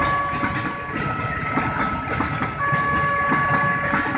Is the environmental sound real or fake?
real